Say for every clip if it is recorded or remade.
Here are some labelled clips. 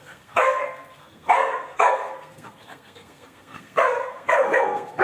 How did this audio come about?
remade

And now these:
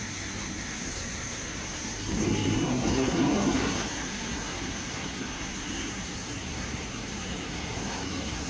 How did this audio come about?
remade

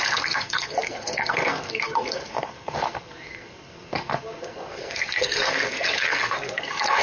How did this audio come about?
remade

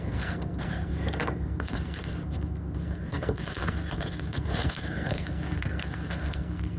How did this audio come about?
remade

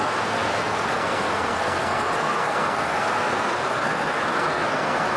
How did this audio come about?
remade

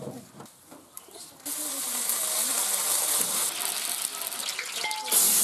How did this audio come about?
recorded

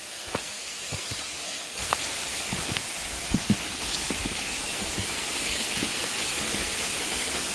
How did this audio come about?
remade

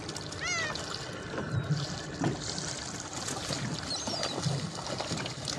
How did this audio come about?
recorded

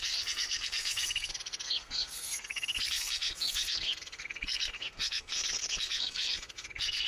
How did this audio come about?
remade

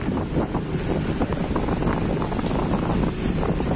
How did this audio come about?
recorded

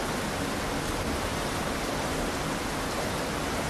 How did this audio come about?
recorded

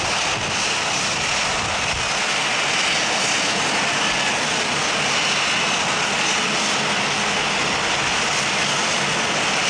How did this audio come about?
recorded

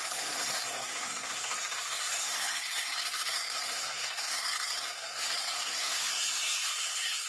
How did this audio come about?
remade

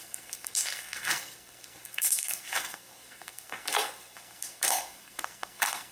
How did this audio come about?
remade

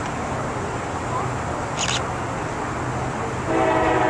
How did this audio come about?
recorded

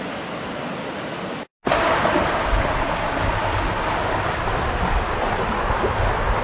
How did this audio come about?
recorded